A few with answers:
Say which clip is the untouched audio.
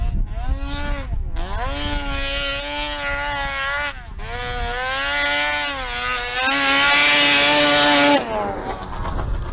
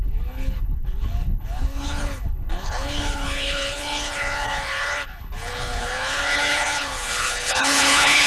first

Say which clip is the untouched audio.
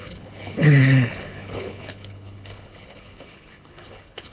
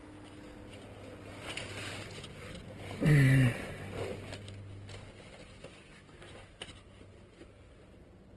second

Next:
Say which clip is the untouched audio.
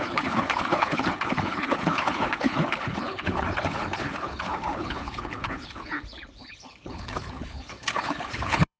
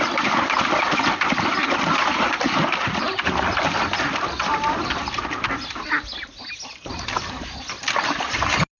second